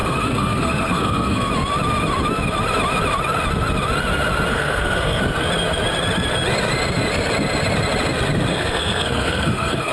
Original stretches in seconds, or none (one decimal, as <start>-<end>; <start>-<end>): 1.5-4.5; 5.2-8.5